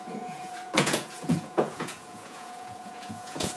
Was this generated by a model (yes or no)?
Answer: yes